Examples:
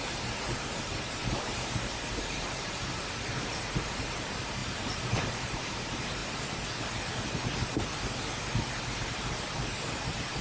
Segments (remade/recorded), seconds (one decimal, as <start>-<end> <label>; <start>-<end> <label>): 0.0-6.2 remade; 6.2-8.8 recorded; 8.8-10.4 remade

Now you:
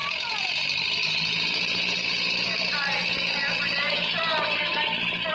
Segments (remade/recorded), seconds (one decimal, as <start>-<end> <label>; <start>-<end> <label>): 0.0-0.6 remade; 0.6-1.0 recorded; 1.0-4.2 remade; 4.2-5.3 recorded

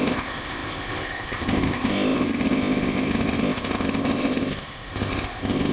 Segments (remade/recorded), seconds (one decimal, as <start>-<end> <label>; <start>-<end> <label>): 0.0-5.7 remade

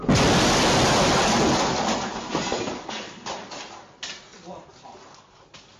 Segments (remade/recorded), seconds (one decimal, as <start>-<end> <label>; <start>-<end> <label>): 0.0-5.8 recorded